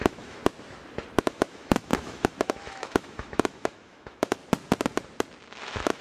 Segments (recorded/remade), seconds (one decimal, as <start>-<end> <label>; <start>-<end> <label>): 0.0-0.4 remade; 0.4-1.2 recorded; 1.2-4.4 remade; 4.4-5.4 recorded; 5.4-6.0 remade

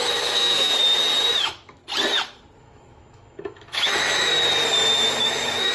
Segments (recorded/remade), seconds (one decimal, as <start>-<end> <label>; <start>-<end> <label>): 0.0-0.7 remade; 0.7-1.3 recorded; 1.3-1.8 remade; 1.8-2.6 recorded; 2.6-4.3 remade; 4.3-5.2 recorded; 5.2-5.7 remade

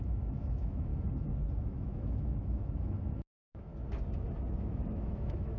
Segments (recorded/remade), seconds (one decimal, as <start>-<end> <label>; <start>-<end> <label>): 0.0-0.9 remade; 0.9-1.7 recorded; 1.7-3.7 remade; 3.7-4.5 recorded; 4.5-5.6 remade

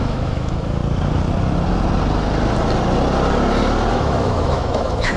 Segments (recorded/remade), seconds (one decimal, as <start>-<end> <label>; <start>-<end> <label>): 0.0-0.8 remade; 0.8-3.9 recorded; 3.9-5.2 remade

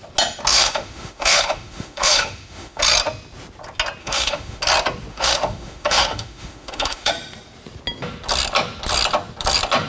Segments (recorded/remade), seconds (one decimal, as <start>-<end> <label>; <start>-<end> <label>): 0.0-0.5 recorded; 0.5-2.8 remade; 2.8-4.0 recorded; 4.0-4.6 remade; 4.6-5.1 recorded; 5.1-7.1 remade; 7.1-9.9 recorded

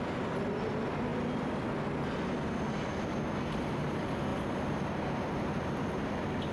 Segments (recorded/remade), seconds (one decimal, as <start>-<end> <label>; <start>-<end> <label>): 0.0-6.5 recorded

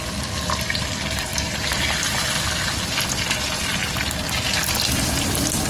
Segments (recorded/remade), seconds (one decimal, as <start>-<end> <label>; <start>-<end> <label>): 0.0-5.7 recorded

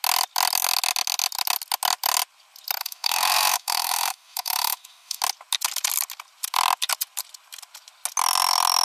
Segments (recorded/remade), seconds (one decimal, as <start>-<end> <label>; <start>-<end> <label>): 0.0-2.8 recorded; 2.8-5.2 remade; 5.2-8.8 recorded